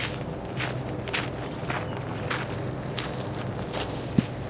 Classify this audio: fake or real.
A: real